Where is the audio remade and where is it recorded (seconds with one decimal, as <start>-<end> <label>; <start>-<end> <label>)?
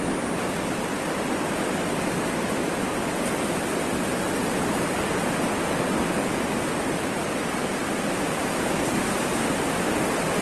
0.0-10.4 recorded